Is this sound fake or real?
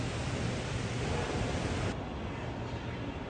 real